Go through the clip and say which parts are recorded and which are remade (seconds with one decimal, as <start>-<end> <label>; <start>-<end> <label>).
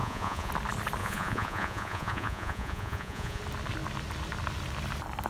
0.0-0.5 remade; 0.5-1.0 recorded; 1.0-3.4 remade; 3.4-5.3 recorded